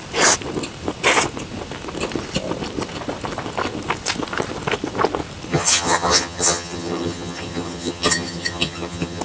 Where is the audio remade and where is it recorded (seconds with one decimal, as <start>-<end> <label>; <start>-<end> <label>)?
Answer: 0.0-5.5 recorded; 5.5-9.2 remade